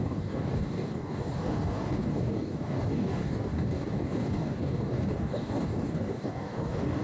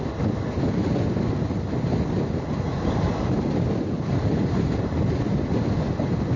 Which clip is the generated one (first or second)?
first